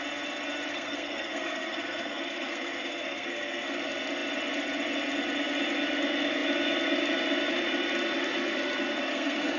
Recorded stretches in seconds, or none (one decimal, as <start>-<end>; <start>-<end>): 0.0-0.7; 3.8-9.1